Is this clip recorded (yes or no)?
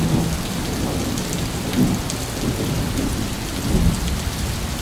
yes